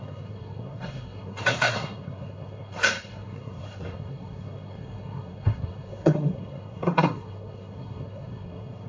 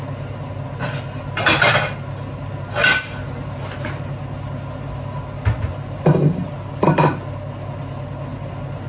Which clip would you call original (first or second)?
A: second